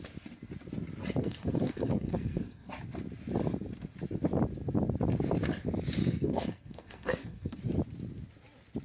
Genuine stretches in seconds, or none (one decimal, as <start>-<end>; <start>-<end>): 0.0-1.2; 2.7-6.0; 7.6-8.8